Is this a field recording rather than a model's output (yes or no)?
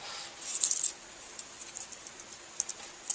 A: yes